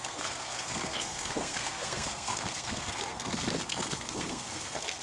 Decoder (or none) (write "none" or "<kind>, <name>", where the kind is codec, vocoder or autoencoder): codec, SNAC